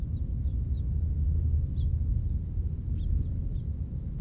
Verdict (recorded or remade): recorded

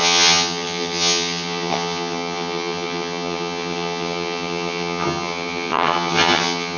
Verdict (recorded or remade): remade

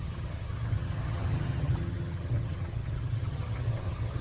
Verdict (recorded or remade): remade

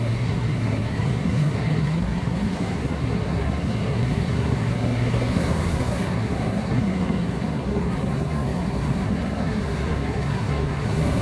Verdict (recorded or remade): remade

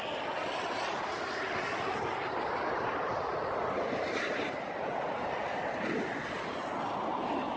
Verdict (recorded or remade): recorded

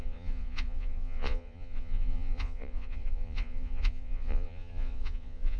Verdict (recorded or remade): remade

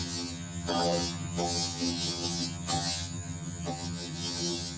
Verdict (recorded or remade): remade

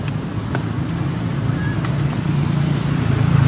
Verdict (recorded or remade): recorded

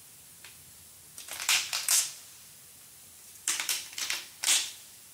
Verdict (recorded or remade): remade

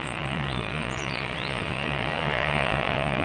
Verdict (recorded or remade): remade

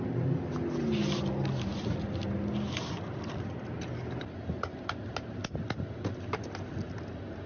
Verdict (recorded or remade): recorded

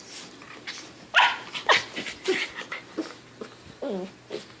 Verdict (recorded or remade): recorded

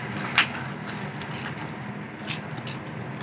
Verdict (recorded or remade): recorded